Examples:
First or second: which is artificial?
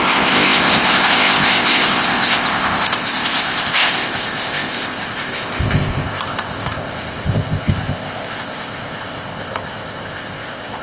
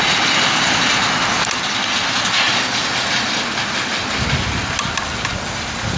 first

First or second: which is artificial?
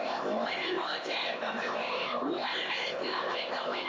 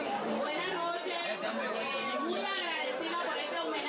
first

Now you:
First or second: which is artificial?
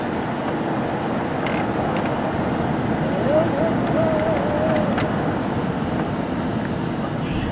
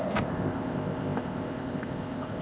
second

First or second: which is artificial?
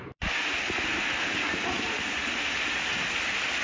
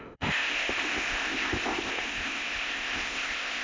second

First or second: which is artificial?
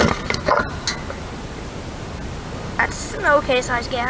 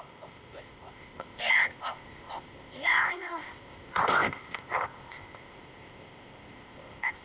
second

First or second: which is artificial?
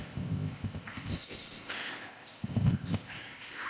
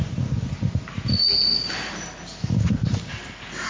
first